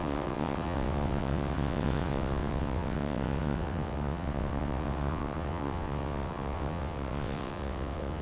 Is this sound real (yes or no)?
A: no